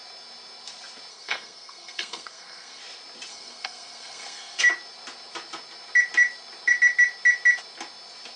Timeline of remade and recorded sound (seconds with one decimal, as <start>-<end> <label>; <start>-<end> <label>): 0.0-1.1 recorded; 1.1-2.8 remade; 2.8-3.3 recorded; 3.3-4.6 remade; 4.6-8.4 recorded